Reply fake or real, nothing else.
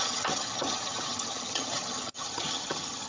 fake